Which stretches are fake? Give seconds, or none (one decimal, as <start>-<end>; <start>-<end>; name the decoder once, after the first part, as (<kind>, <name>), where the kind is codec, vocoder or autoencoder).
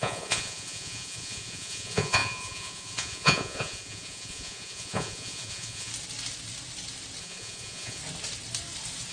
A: 0.0-5.9 (vocoder, Vocos); 7.2-8.0